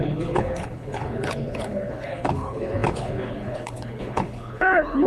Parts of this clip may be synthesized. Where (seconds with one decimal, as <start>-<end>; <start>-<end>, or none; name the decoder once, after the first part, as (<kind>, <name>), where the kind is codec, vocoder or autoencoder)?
0.0-5.1 (codec, HILCodec)